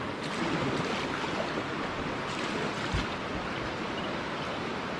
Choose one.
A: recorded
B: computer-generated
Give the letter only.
A